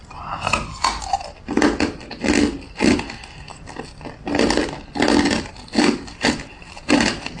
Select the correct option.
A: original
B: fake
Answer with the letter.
A